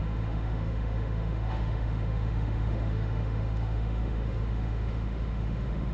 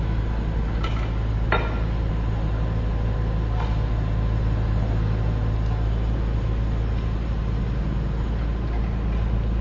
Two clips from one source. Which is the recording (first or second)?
second